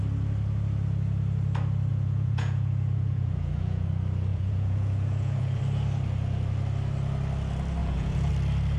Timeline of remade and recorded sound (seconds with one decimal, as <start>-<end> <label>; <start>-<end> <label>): 0.0-1.9 recorded; 1.9-3.9 remade; 3.9-4.3 recorded; 4.3-5.6 remade; 5.6-7.8 recorded; 7.8-8.3 remade; 8.3-8.8 recorded

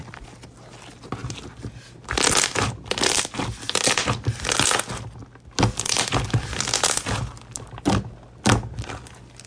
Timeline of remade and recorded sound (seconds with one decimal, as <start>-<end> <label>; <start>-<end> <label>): 0.0-9.5 recorded

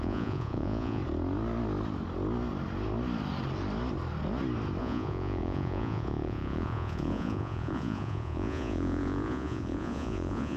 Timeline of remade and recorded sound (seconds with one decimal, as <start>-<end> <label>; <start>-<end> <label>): 0.0-1.0 remade; 1.0-4.8 recorded; 4.8-10.6 remade

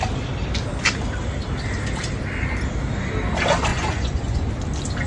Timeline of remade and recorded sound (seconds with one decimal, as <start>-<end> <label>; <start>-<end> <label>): 0.0-3.7 recorded; 3.7-4.5 remade; 4.5-5.1 recorded